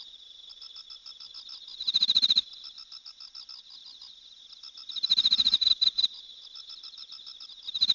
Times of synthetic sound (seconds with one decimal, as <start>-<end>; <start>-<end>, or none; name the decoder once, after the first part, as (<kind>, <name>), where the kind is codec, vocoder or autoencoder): none